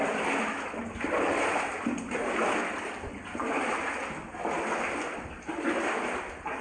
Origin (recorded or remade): recorded